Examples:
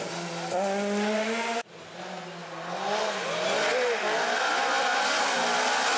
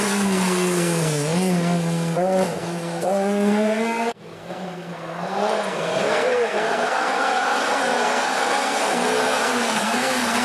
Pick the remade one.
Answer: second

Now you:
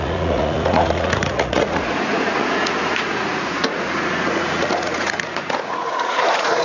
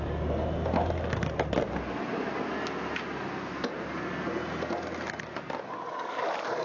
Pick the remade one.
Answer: first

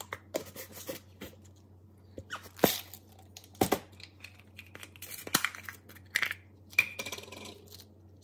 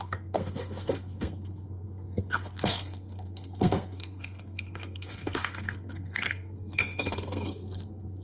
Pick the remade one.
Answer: second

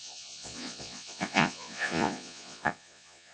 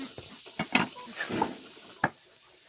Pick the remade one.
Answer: first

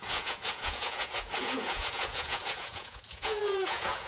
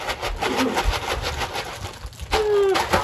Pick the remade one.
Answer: first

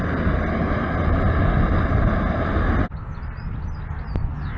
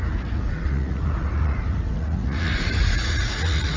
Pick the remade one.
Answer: second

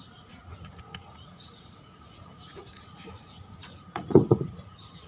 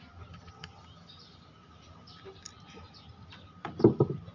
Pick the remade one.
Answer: first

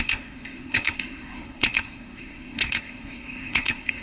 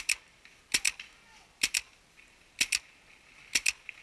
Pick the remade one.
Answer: first